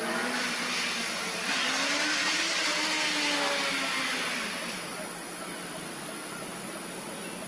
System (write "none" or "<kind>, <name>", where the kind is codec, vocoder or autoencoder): none